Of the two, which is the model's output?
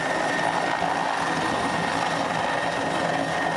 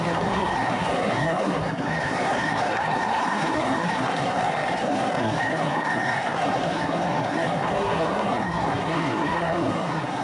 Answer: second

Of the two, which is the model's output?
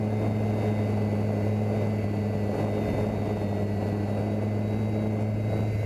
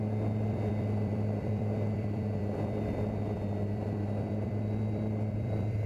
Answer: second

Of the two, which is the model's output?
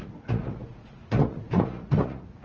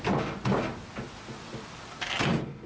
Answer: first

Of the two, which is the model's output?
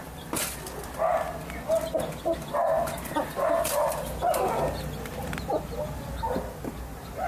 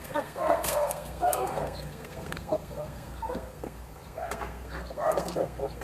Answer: second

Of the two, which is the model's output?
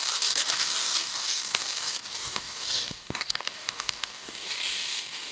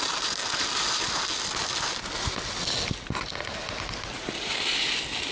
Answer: first